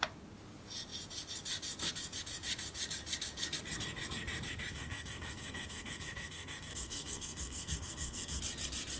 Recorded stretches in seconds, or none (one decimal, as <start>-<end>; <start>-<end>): 0.0-4.7; 8.4-9.0